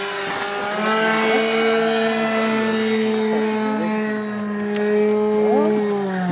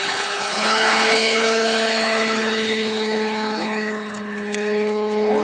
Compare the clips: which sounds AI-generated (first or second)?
second